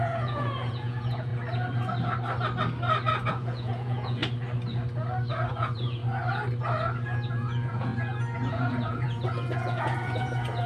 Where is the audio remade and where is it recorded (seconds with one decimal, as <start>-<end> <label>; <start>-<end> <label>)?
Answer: 0.0-1.3 remade; 1.3-3.3 recorded; 3.3-4.2 remade; 4.2-5.5 recorded; 5.5-6.0 remade; 6.0-7.3 recorded; 7.3-7.9 remade; 7.9-8.5 recorded; 8.5-10.7 remade